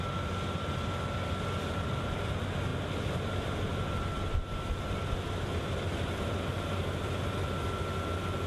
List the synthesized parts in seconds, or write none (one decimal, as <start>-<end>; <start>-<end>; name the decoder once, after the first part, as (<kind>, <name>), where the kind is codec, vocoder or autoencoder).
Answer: none